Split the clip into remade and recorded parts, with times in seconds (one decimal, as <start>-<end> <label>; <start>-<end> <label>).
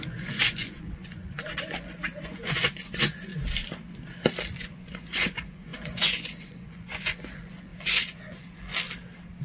0.0-3.3 remade; 3.3-4.6 recorded; 4.6-8.7 remade; 8.7-9.4 recorded